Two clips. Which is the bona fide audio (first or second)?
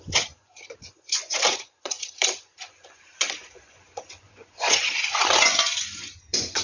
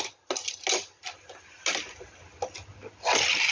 second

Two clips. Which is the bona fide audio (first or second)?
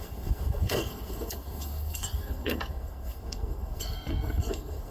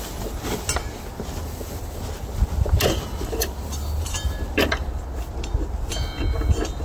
second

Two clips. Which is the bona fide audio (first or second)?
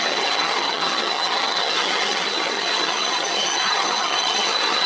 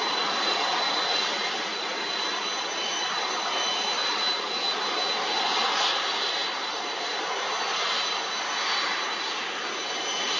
second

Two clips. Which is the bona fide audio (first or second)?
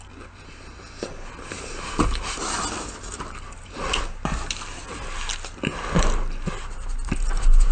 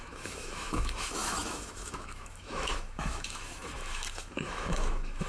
first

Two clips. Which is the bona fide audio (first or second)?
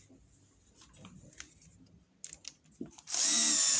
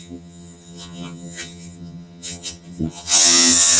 first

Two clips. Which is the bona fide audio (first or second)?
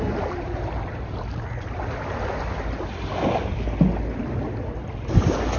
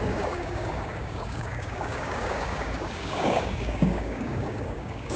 first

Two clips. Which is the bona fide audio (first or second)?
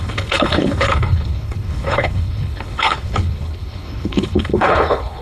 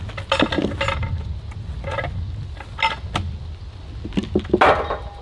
second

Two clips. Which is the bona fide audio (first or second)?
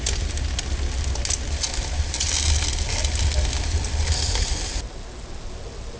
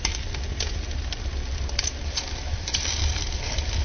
first